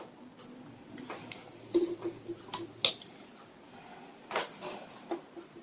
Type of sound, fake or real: real